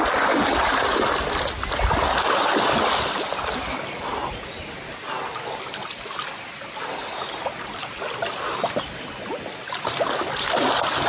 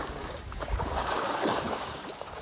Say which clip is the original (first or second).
first